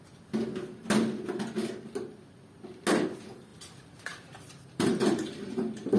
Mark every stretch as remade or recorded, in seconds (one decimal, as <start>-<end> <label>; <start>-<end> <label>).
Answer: 0.0-3.5 recorded; 3.5-6.0 remade